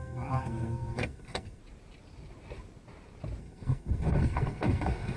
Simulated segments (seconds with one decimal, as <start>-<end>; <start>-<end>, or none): 0.0-1.6; 3.4-5.2